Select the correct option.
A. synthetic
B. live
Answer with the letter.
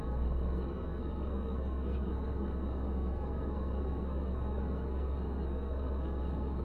A